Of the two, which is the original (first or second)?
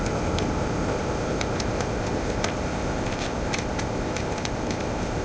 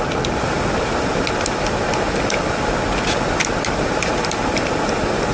second